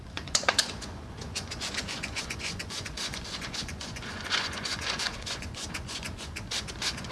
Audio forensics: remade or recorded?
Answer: remade